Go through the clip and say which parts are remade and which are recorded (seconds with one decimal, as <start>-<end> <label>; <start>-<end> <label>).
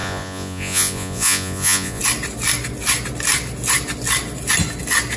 0.0-2.0 remade; 2.0-5.2 recorded